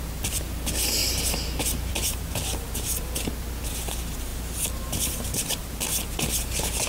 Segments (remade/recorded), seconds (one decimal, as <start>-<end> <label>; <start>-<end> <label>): 0.0-6.9 recorded